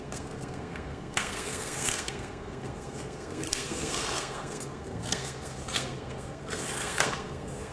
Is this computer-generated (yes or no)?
yes